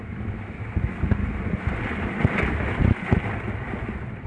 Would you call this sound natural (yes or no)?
yes